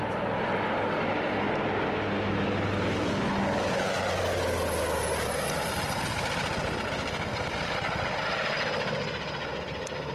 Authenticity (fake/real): real